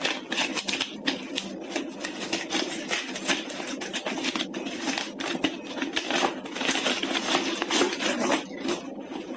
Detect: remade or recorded recorded